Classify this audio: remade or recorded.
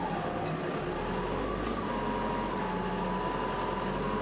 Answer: recorded